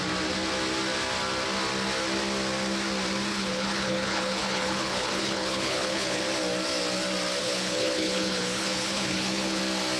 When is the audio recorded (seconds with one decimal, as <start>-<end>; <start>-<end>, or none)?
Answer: 0.0-3.3; 6.2-7.4; 9.6-10.0